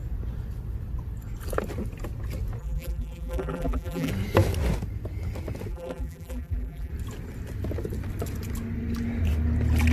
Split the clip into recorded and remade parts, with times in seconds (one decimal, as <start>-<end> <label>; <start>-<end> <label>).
0.0-2.6 recorded; 2.6-4.1 remade; 4.1-5.7 recorded; 5.7-6.9 remade; 6.9-9.9 recorded